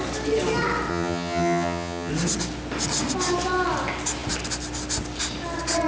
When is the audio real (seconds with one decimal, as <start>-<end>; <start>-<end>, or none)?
0.0-0.9; 2.1-5.9